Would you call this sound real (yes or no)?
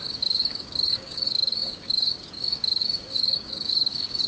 no